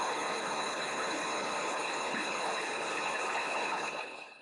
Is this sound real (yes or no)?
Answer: no